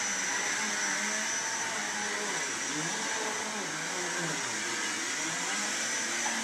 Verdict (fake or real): real